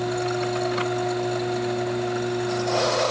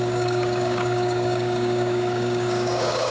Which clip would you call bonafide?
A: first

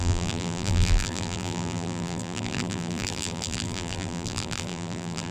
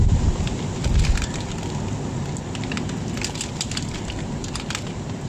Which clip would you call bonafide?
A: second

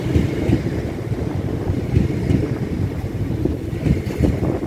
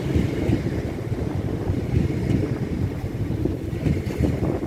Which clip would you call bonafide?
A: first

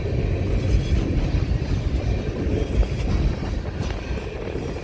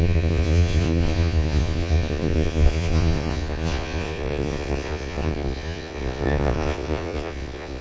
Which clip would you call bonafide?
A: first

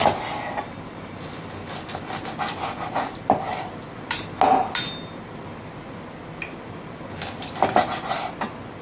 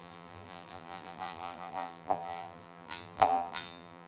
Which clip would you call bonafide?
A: first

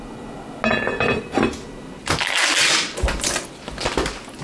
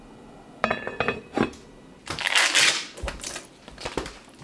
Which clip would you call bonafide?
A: first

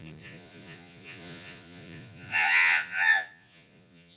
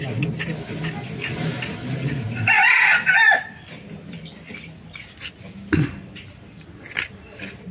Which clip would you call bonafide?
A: second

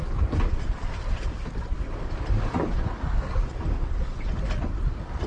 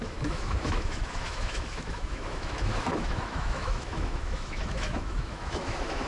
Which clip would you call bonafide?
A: first